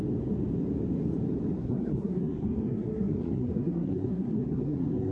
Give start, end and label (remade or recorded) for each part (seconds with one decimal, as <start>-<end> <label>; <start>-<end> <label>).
0.0-1.6 recorded; 1.6-5.1 remade